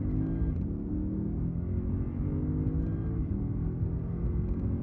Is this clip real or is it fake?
real